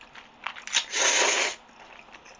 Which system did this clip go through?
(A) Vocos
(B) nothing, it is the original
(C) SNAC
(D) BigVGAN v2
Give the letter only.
B